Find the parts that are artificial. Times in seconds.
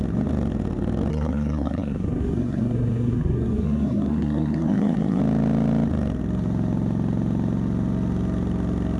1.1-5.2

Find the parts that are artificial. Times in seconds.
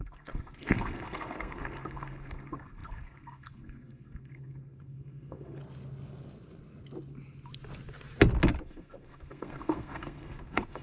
0.0-5.6; 8.6-10.8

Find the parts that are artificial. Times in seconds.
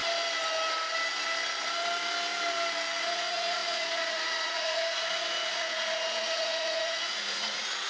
3.0-7.9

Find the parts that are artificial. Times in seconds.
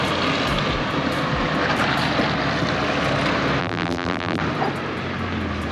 3.6-4.4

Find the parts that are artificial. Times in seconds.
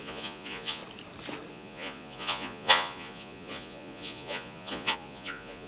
0.0-0.8; 1.5-5.7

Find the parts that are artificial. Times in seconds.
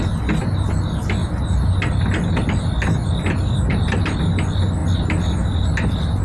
none